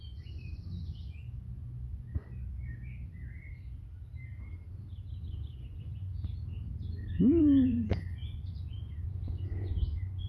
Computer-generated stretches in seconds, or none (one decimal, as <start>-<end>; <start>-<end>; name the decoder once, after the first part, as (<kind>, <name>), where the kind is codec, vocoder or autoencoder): 0.0-2.2 (vocoder, Vocos); 5.2-6.1; 7.4-10.3